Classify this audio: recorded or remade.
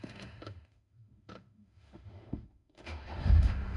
remade